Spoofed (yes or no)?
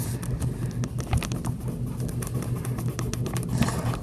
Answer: no